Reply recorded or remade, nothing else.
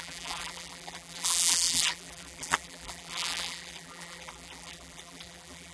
remade